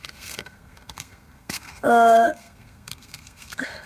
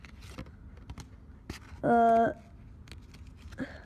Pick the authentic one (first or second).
second